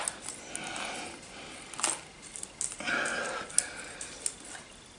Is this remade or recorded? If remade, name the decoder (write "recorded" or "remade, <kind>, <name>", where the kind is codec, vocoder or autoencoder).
recorded